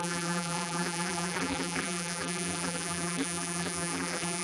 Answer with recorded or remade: remade